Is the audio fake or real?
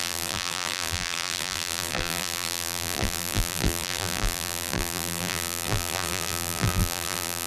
fake